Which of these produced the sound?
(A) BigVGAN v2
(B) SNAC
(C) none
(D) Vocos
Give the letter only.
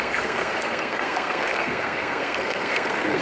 B